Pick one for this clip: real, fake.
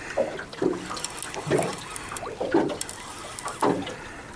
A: real